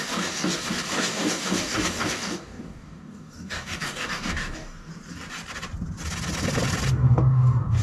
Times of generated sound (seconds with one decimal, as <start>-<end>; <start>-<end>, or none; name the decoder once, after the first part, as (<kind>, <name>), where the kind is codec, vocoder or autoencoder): 0.0-4.9 (codec, DAC); 6.9-7.8